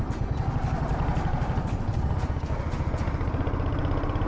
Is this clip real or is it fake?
real